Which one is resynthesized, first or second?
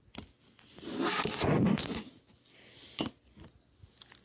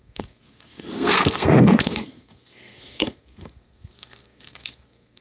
second